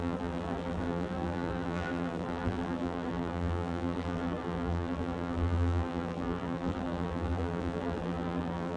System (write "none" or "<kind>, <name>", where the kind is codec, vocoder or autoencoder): vocoder, BigVGAN v2